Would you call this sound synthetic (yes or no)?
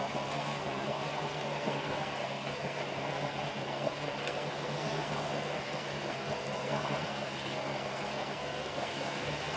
yes